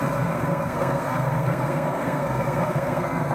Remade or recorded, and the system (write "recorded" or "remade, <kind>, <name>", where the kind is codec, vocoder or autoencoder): remade, codec, SNAC